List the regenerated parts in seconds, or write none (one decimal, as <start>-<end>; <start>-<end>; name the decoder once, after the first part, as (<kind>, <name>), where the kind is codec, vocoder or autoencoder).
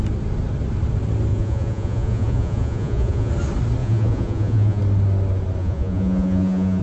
1.3-3.3 (vocoder, Vocos); 3.8-4.8; 5.6-6.8